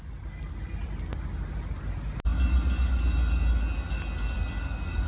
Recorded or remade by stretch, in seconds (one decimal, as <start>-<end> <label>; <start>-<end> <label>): 0.0-5.1 recorded